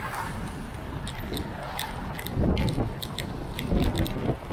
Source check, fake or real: real